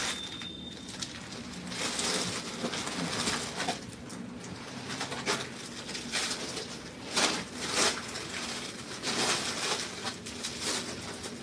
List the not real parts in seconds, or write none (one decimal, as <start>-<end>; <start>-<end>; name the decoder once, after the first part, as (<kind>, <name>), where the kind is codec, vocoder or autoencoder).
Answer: 6.2-9.2 (vocoder, BigVGAN v2)